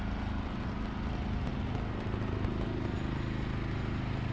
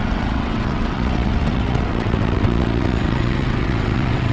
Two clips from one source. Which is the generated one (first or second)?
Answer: second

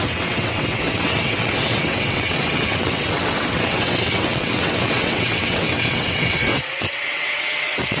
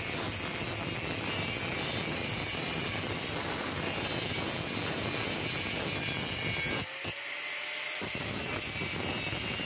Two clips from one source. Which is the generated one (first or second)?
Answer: first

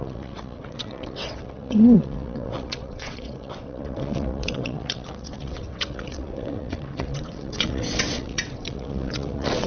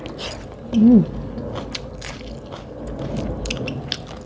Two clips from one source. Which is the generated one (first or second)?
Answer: first